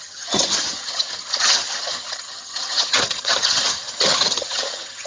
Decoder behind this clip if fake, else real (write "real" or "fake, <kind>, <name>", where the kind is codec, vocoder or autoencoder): fake, vocoder, HiFi-GAN